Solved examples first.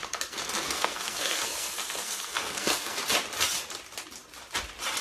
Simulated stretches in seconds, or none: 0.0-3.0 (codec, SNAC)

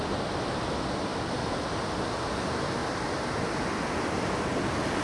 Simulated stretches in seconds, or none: none

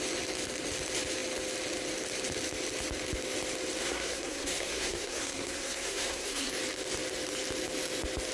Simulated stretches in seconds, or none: 3.8-6.5 (codec, SNAC)

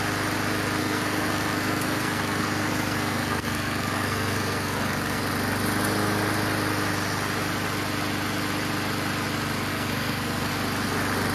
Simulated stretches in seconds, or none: 0.8-5.2 (codec, SNAC); 9.7-10.5

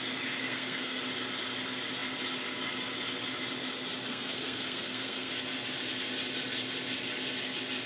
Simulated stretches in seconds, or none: 0.4-1.0 (codec, SNAC); 4.1-5.3